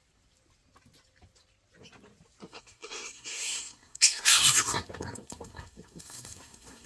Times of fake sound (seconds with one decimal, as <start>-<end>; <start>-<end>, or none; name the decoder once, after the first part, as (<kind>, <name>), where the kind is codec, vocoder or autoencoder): 2.5-6.9 (codec, SNAC)